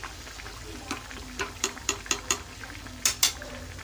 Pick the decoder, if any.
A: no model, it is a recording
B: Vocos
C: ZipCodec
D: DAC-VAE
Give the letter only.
A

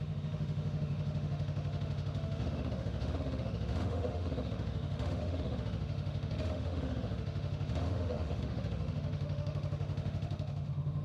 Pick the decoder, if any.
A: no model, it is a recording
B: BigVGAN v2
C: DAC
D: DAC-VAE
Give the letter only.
D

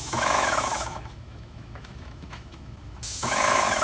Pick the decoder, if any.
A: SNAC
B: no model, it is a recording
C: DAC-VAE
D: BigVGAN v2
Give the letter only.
C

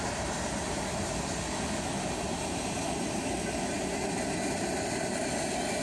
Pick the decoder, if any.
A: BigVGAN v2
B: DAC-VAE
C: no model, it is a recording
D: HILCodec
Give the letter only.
C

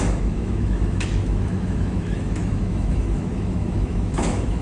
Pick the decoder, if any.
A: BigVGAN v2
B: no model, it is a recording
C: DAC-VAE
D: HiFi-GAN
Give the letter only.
C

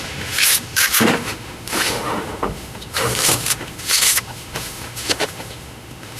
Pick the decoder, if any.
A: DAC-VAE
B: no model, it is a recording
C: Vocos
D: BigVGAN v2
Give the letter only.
A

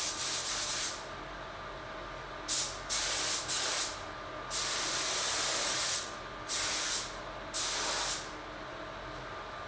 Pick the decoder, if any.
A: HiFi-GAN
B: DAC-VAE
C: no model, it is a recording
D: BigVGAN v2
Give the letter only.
C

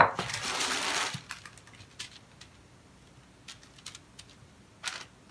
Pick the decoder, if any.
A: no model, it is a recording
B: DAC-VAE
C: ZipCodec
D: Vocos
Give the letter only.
A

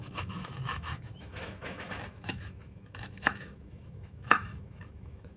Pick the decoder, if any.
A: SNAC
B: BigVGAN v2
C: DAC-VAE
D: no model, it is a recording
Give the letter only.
C